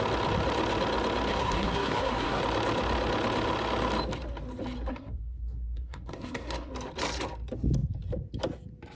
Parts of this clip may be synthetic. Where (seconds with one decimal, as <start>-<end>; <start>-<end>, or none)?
1.3-2.4; 4.9-6.7